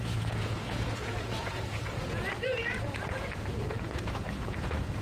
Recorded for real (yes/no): no